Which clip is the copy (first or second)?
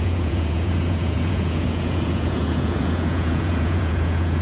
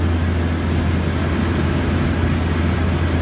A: first